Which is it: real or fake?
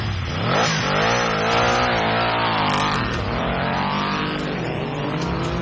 real